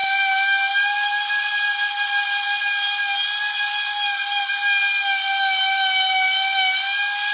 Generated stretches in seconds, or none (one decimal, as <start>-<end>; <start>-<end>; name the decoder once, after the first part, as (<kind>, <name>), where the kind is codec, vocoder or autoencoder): none